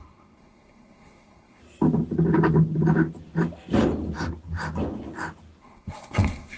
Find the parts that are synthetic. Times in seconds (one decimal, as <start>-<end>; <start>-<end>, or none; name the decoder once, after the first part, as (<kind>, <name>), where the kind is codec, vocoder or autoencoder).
0.0-1.6 (codec, SNAC); 5.6-6.6